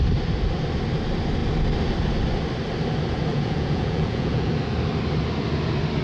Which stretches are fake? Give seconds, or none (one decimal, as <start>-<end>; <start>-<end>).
3.3-4.5